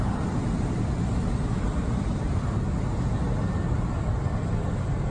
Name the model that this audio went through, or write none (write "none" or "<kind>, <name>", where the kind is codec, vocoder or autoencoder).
none